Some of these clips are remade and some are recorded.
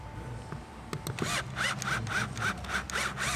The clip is recorded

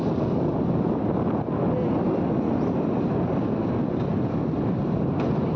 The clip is recorded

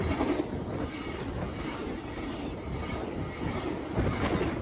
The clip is recorded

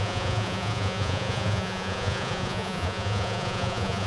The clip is remade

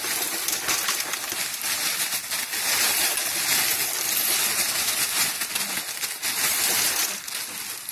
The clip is recorded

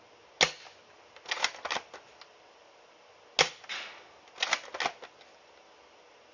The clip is recorded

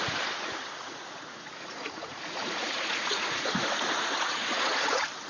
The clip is remade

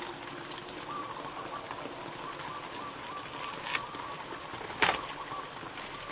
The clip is remade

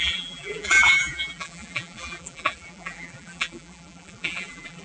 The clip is remade